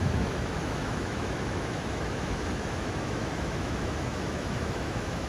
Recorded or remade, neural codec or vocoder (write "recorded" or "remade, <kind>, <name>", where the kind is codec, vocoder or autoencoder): remade, autoencoder, DAC-VAE